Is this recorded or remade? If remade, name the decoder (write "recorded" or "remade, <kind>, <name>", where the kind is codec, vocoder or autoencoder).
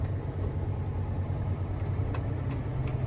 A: recorded